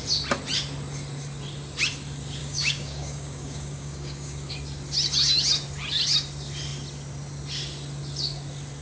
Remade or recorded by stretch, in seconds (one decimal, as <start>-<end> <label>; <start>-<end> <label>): 0.0-2.4 recorded; 2.4-4.5 remade; 4.5-8.8 recorded